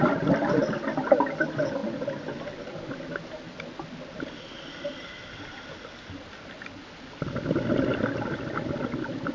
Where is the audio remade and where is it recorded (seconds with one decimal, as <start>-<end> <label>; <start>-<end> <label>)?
0.0-9.3 recorded